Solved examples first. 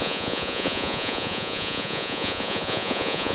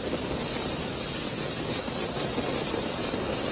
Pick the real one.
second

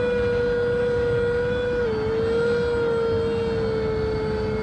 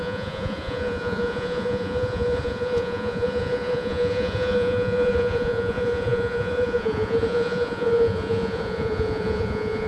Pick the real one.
first